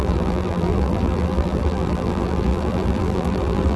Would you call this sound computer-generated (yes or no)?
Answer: yes